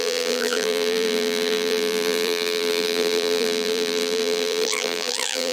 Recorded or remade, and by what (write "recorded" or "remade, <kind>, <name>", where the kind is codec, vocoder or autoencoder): remade, vocoder, BigVGAN v2